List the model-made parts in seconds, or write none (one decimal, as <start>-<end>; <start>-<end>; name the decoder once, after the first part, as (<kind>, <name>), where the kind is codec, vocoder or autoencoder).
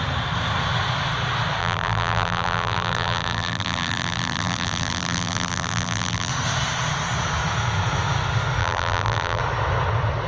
1.6-6.3 (vocoder, BigVGAN v2); 8.6-9.4